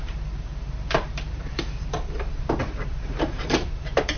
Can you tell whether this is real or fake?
fake